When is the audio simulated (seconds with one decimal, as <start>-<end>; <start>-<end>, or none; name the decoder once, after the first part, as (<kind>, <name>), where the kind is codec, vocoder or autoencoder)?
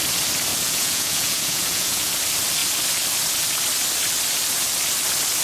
0.5-2.1 (vocoder, Vocos)